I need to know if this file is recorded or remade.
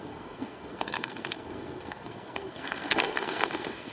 remade